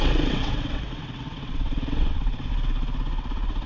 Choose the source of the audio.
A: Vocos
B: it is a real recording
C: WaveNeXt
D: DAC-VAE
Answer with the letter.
C